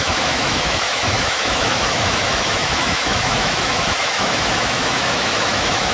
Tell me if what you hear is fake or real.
fake